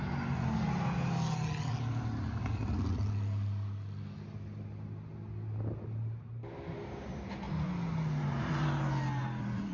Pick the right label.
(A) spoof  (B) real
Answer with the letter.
B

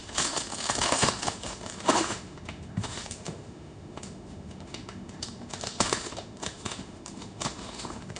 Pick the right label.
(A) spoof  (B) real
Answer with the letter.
A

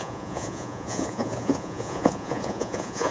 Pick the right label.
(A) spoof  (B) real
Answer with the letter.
A